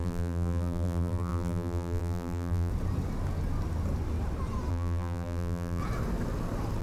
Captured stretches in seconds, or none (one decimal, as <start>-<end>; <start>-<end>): 2.7-4.7; 5.8-6.8